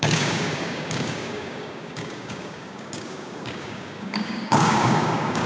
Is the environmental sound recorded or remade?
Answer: remade